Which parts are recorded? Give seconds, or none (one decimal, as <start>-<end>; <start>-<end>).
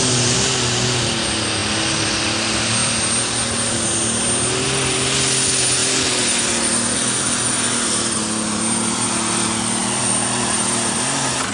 0.0-11.5